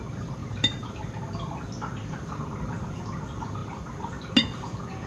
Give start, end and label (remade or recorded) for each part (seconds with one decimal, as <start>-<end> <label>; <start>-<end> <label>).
0.0-0.4 recorded; 0.4-1.0 remade; 1.0-2.0 recorded; 2.0-3.0 remade; 3.0-3.6 recorded; 3.6-4.3 remade; 4.3-5.1 recorded